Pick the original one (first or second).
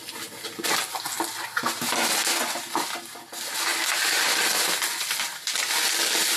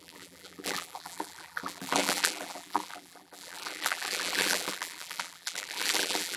first